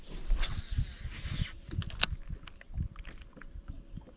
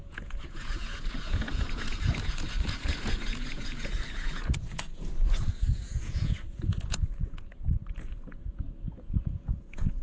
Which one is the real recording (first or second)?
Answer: first